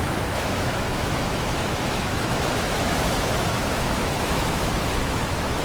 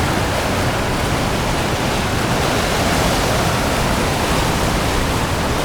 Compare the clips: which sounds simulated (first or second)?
first